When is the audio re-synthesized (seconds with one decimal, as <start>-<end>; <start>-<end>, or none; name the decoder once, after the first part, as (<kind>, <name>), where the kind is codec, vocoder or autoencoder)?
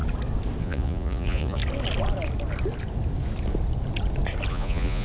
0.6-1.6 (vocoder, Vocos); 4.5-5.0